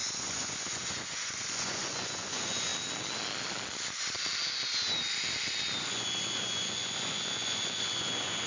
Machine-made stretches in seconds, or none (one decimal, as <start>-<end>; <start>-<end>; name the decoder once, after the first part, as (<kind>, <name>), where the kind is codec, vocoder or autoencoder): 0.0-2.7 (vocoder, Vocos); 5.8-8.5